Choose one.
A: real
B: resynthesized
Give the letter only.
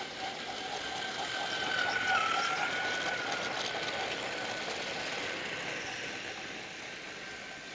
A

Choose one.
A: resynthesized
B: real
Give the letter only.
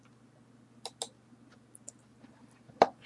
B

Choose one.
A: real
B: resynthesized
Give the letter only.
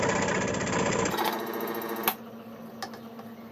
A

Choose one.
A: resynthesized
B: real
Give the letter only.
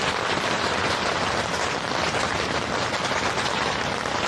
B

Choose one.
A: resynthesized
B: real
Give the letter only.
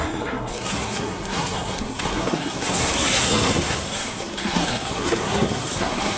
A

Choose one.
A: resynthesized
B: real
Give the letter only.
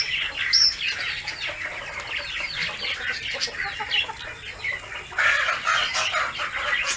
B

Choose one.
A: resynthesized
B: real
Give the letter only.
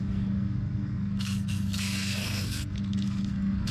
A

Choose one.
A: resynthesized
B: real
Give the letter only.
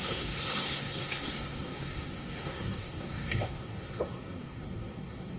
A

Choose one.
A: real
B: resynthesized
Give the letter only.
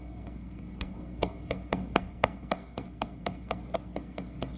B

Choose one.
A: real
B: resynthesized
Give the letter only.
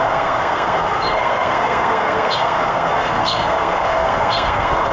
B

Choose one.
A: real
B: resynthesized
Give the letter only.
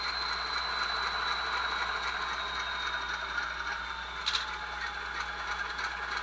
A